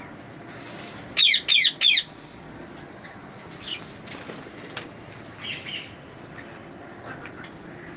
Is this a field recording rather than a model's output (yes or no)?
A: yes